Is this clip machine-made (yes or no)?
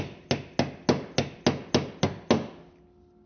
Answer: no